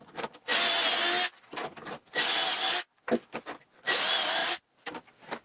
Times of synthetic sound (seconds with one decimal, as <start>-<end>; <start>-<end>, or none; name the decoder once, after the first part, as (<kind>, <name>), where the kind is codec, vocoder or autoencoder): 4.4-4.9 (vocoder, Vocos)